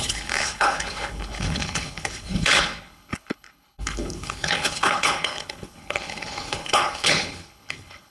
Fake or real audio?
fake